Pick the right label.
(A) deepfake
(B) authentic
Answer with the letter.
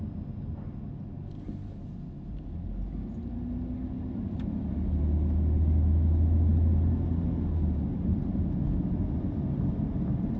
B